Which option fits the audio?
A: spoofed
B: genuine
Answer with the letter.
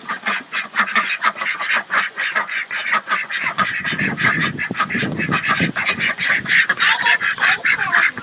A